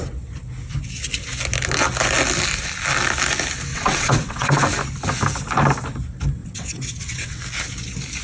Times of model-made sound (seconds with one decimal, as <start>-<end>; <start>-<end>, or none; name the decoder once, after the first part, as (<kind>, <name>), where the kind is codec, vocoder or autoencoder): 3.7-4.5 (vocoder, WaveNeXt); 6.4-7.4